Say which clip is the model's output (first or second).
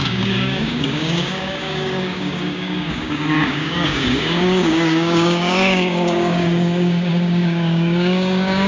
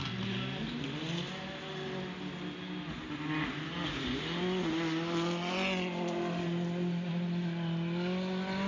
first